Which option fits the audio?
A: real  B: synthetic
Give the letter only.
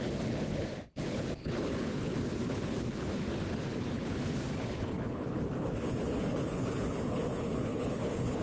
B